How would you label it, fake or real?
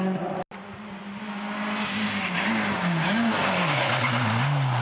real